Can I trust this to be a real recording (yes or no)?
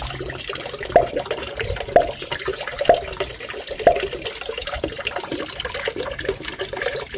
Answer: yes